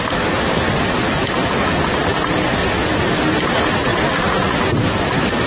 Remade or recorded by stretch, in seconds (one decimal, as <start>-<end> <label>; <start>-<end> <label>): 0.0-2.6 remade; 2.6-3.3 recorded; 3.3-3.9 remade; 3.9-4.5 recorded; 4.5-5.5 remade